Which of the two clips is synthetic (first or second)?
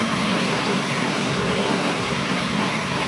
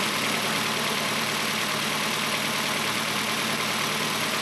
first